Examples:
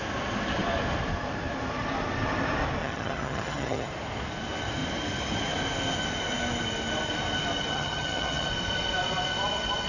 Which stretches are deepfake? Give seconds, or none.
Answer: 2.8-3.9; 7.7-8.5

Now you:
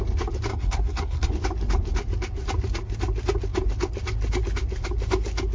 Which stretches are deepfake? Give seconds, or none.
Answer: 0.5-1.3

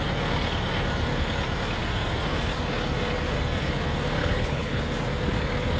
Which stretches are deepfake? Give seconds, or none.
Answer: 4.2-4.8